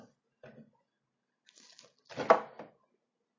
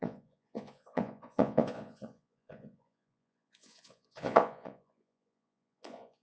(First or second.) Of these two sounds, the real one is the first